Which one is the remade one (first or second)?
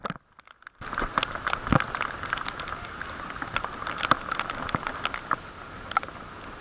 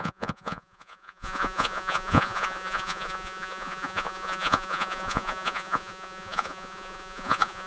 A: second